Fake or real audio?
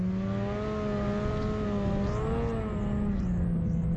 real